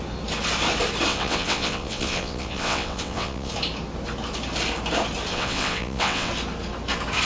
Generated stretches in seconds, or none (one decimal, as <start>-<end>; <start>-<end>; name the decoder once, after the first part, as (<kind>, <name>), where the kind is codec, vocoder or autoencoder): 1.1-3.5 (vocoder, WaveNeXt); 5.3-6.3